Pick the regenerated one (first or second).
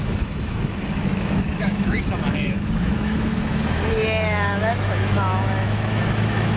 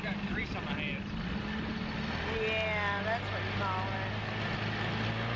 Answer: first